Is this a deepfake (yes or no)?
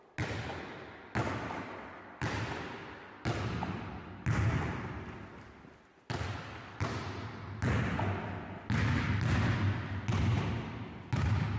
no